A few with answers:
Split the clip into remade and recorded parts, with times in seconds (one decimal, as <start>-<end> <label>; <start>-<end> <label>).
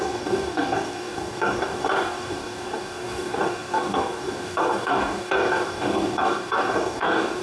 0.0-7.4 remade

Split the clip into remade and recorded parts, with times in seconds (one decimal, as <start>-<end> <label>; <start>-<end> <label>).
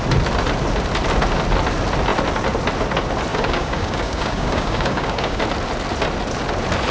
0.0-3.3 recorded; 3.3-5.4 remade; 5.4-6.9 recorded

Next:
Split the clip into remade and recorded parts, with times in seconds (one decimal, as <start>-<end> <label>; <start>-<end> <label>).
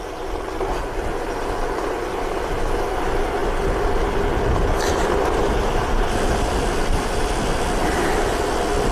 0.0-8.9 recorded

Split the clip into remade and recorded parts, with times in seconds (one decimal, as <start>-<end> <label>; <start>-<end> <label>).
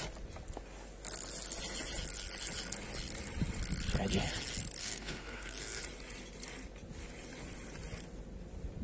0.0-4.8 recorded; 4.8-5.8 remade; 5.8-8.8 recorded